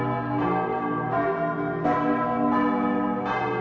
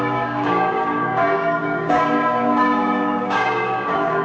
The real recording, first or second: first